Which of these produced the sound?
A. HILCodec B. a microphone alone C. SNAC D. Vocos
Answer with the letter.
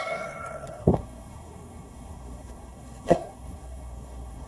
C